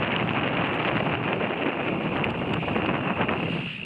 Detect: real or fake real